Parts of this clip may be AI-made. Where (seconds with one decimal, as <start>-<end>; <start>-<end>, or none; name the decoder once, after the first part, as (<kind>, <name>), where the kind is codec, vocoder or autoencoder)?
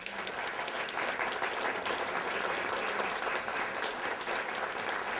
none